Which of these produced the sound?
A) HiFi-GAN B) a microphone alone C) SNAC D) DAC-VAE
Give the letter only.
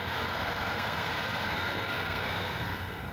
C